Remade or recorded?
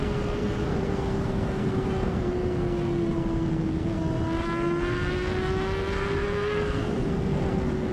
remade